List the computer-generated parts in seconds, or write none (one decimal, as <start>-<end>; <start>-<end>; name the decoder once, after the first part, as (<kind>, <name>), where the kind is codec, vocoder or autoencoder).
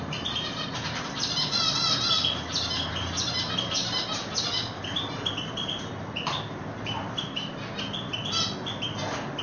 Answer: 0.0-3.8 (vocoder, BigVGAN v2); 6.0-8.2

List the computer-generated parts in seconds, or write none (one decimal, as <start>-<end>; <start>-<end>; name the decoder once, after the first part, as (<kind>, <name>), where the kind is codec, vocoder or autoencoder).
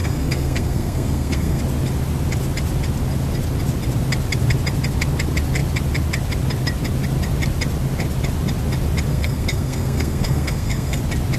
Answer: 0.0-1.6 (codec, SNAC); 9.1-11.0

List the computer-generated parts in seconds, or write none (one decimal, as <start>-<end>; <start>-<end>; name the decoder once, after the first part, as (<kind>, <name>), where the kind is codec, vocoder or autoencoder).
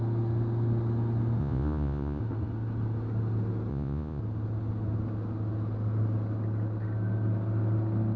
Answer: 1.4-2.2 (vocoder, Vocos); 3.7-4.2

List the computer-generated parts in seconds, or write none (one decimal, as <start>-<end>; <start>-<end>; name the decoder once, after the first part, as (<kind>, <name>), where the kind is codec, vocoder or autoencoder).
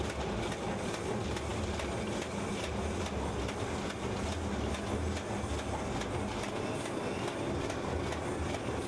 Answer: none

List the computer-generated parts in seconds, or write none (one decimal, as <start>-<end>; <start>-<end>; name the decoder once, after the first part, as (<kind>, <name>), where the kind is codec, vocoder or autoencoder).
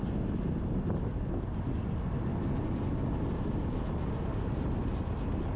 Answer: none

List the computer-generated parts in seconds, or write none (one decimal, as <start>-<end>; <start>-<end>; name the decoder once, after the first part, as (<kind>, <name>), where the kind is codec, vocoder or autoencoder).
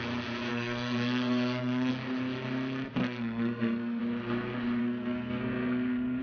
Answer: 0.5-1.9 (codec, SNAC); 3.0-4.0; 4.8-6.2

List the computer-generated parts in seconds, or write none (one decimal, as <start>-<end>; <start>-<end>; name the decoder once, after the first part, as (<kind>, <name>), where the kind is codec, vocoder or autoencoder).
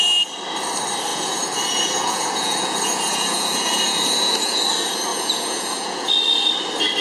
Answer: 1.1-4.6 (vocoder, Vocos); 5.1-6.1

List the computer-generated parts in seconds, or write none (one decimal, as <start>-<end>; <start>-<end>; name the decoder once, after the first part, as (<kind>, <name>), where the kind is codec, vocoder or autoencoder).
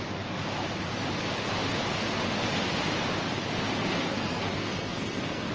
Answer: 3.8-5.5 (codec, SNAC)